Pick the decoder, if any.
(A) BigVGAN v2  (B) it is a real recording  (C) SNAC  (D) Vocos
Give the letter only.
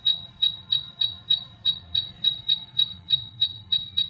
D